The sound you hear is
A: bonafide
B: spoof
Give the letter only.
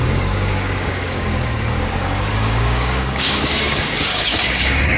B